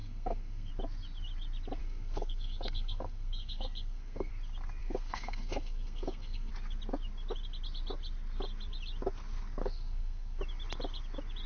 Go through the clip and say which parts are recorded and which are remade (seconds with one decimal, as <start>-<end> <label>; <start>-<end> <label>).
0.0-0.7 remade; 0.7-1.8 recorded; 1.8-4.3 remade; 4.3-4.8 recorded; 4.8-6.5 remade; 6.5-9.6 recorded; 9.6-10.4 remade; 10.4-11.5 recorded